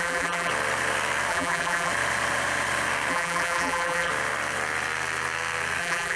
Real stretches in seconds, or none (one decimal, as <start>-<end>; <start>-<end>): 0.5-1.3; 1.9-3.1; 4.1-5.8